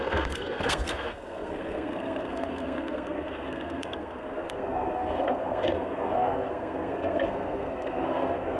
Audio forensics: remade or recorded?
remade